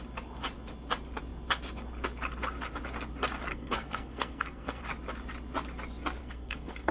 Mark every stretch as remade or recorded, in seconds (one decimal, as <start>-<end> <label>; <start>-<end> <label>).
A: 0.0-3.5 recorded; 3.5-4.8 remade; 4.8-6.2 recorded; 6.2-6.9 remade